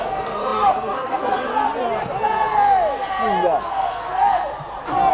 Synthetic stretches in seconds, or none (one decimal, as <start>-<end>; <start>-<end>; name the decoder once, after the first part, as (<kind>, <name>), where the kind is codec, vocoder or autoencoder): 0.0-1.5 (codec, SNAC); 3.6-4.5